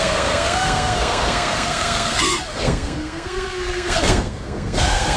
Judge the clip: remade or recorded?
remade